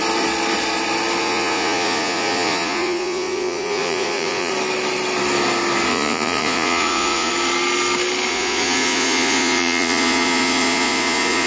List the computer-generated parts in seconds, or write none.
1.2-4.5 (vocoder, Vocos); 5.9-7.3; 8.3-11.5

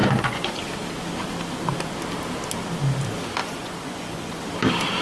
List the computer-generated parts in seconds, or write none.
0.0-0.6 (vocoder, Vocos); 3.4-4.4

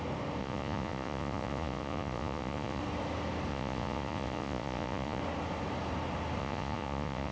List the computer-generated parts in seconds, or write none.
0.4-2.8 (vocoder, Vocos); 3.5-5.2; 6.4-7.3

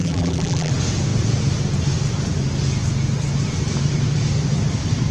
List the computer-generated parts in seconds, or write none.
0.0-0.7 (vocoder, BigVGAN v2)

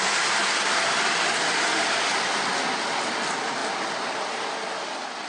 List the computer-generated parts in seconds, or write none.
none